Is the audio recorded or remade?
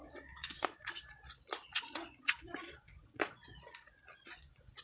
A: remade